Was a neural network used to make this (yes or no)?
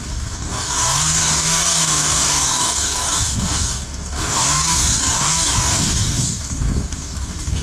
yes